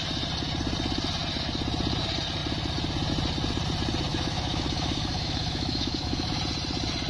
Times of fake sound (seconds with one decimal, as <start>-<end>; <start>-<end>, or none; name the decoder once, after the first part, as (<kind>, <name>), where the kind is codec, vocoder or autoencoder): 4.1-6.4 (autoencoder, DAC-VAE)